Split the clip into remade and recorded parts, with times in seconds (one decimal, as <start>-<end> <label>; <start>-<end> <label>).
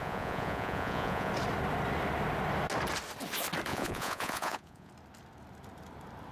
0.0-1.3 remade; 1.3-3.7 recorded; 3.7-4.9 remade; 4.9-6.3 recorded